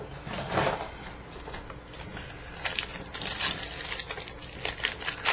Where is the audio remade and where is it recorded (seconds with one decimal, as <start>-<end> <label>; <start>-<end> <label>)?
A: 0.0-5.3 recorded